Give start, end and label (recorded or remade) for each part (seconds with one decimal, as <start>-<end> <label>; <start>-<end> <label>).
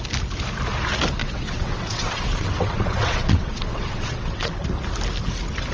0.0-1.2 recorded; 1.2-4.6 remade; 4.6-5.7 recorded